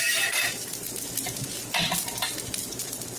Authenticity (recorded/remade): recorded